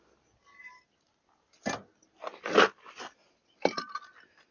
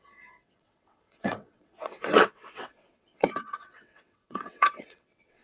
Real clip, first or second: first